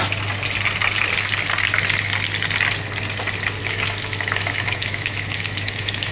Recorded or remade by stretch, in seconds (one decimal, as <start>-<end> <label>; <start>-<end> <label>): 0.0-3.6 recorded; 3.6-6.1 remade

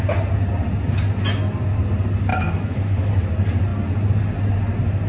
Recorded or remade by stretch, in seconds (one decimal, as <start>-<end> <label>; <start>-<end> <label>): 0.0-2.3 recorded; 2.3-3.1 remade; 3.1-5.1 recorded

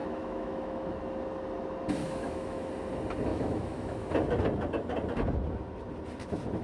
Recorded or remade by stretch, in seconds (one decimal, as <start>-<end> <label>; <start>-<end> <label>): 0.0-1.0 remade; 1.0-2.0 recorded; 2.0-2.7 remade; 2.7-3.3 recorded; 3.3-4.1 remade; 4.1-6.6 recorded